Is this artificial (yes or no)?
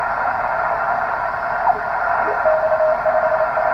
no